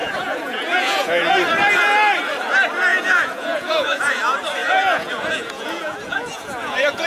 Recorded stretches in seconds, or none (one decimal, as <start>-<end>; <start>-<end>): 1.3-2.9; 4.1-4.6